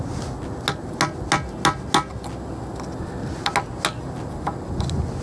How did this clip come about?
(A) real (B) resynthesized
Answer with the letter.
A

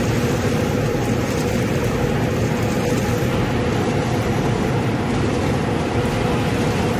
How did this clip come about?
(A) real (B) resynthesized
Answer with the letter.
B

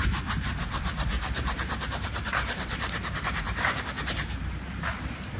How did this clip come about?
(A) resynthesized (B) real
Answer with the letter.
A